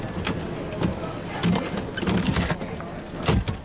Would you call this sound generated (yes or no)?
no